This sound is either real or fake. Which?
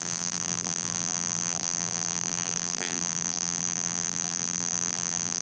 fake